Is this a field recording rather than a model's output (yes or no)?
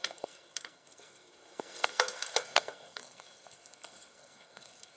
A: no